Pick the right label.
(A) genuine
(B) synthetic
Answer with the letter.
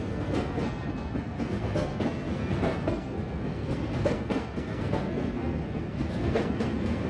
B